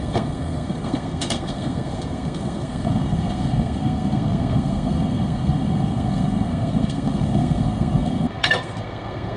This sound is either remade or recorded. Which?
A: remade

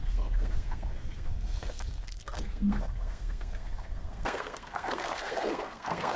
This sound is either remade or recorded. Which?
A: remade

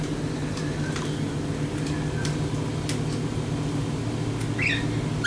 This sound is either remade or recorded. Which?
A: recorded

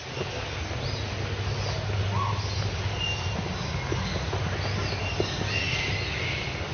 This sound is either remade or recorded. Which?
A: recorded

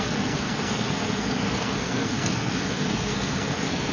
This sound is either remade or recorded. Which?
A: remade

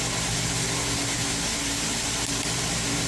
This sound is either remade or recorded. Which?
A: recorded